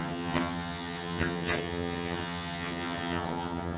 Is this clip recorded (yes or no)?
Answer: no